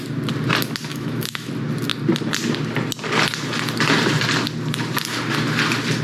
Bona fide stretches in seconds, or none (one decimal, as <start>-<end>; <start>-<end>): 0.0-0.9; 1.5-6.0